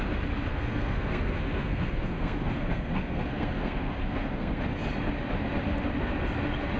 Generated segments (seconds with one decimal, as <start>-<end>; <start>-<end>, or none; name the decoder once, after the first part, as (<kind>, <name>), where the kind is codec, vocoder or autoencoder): 0.5-4.6 (codec, SNAC)